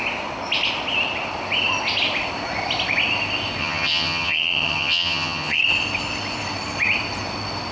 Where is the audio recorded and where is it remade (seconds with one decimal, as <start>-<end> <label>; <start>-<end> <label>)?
0.0-3.6 recorded; 3.6-5.6 remade; 5.6-7.7 recorded